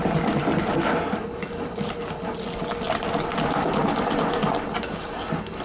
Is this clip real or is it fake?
real